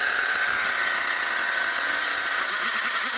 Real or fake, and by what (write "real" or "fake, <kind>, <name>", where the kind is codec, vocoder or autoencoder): fake, vocoder, HiFi-GAN